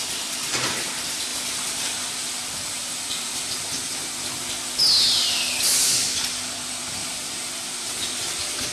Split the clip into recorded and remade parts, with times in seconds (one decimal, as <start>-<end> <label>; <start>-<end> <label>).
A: 0.0-2.2 recorded; 2.2-4.4 remade; 4.4-7.0 recorded; 7.0-8.1 remade; 8.1-8.7 recorded